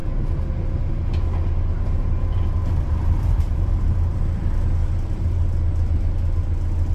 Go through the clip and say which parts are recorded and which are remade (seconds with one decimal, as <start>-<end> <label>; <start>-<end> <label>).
0.0-2.6 recorded; 2.6-4.0 remade; 4.0-4.8 recorded; 4.8-5.7 remade; 5.7-6.9 recorded